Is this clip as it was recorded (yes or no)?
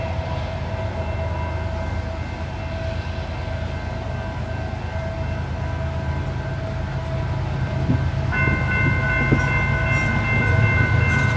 yes